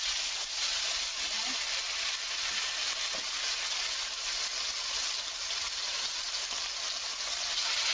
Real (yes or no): yes